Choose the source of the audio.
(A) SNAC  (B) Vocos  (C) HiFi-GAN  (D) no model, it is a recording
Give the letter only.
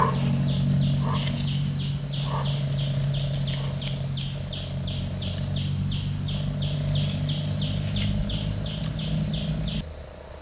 D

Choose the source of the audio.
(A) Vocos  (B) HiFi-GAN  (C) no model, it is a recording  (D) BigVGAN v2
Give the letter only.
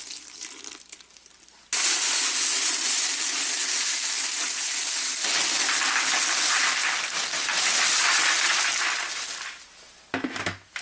C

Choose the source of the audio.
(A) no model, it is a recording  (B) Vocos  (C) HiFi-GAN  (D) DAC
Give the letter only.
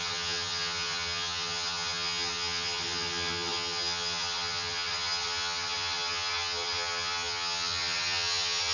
C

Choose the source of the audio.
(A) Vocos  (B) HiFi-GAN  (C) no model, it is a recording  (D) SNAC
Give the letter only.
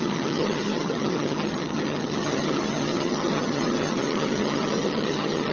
B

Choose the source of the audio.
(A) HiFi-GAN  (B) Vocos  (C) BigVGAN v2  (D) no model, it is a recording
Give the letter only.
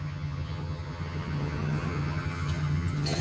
A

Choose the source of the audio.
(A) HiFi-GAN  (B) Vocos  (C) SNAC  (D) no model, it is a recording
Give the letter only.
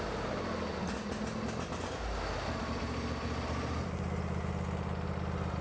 D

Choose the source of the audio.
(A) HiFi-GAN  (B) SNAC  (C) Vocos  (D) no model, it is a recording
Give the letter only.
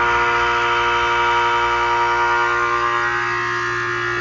D